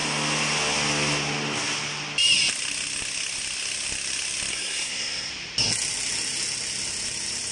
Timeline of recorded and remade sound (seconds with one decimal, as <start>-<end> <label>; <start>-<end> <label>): 0.0-4.5 recorded; 4.5-5.3 remade; 5.3-7.5 recorded